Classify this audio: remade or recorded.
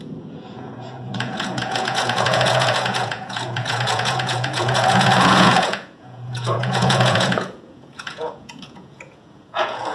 remade